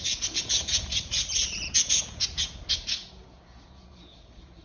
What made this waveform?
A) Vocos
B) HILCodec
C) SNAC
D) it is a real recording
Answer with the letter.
A